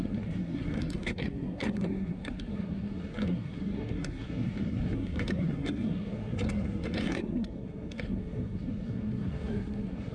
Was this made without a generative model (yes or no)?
no